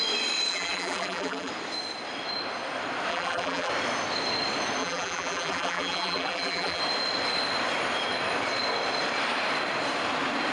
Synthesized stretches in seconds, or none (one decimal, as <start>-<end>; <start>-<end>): 0.5-1.5; 3.1-3.7; 4.8-6.8